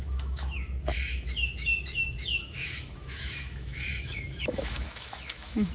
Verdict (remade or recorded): remade